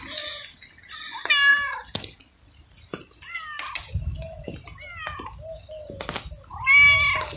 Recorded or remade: recorded